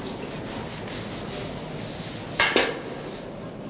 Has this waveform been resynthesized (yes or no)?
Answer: no